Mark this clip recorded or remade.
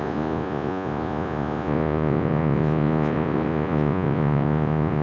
remade